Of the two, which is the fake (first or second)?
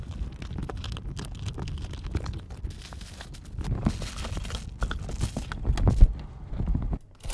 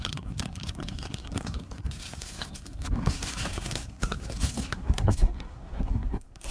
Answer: second